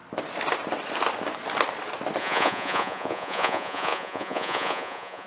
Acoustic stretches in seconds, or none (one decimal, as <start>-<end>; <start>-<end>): 0.0-2.2